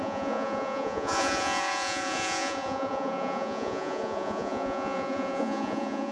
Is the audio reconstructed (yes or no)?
yes